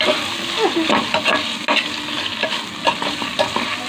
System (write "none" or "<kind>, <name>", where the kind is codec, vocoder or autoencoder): none